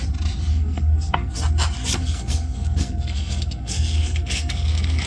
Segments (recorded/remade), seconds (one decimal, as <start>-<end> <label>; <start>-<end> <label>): 0.0-0.5 recorded; 0.5-1.3 remade; 1.3-2.0 recorded; 2.0-5.1 remade